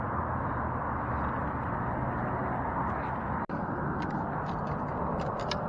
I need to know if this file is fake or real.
real